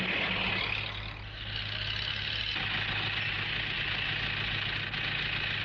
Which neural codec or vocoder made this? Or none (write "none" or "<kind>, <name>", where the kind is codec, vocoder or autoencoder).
none